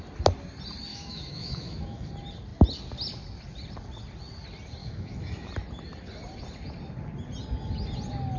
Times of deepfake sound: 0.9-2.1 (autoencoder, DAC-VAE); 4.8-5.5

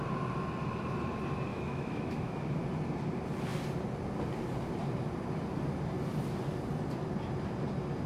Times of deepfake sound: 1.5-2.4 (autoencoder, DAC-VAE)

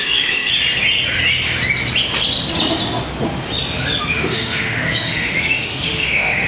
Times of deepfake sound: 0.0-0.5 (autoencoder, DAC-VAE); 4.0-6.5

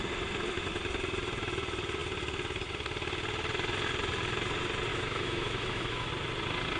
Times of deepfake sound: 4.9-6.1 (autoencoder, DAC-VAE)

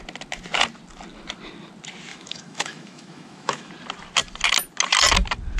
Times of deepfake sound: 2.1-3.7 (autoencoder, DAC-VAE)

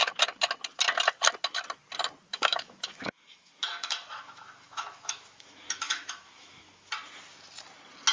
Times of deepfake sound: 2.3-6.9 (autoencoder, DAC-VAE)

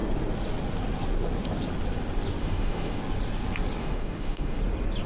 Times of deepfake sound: 2.4-3.0 (autoencoder, DAC-VAE); 3.8-4.6

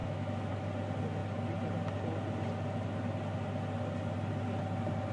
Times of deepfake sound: 0.0-0.5 (autoencoder, DAC-VAE)